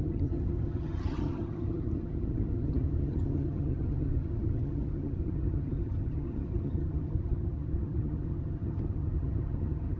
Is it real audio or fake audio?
fake